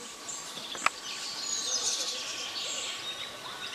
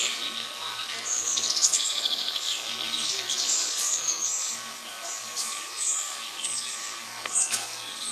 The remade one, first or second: second